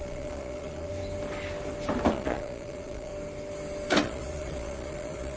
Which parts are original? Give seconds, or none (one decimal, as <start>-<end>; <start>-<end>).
0.9-2.1; 3.1-4.0